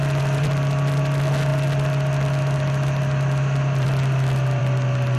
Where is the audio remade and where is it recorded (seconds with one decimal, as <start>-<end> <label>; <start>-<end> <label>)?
0.0-5.2 recorded